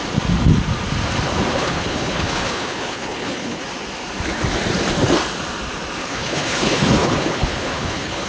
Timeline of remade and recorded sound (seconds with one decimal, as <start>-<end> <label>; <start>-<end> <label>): 0.0-1.5 recorded; 1.5-3.6 remade; 3.6-6.0 recorded; 6.0-8.3 remade